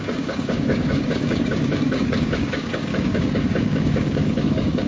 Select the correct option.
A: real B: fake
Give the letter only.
B